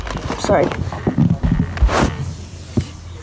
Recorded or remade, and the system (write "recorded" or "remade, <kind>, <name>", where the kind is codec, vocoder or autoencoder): recorded